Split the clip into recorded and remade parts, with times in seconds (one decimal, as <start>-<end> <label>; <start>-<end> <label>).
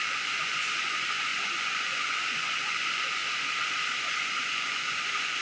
0.0-3.2 remade; 3.2-4.1 recorded; 4.1-5.4 remade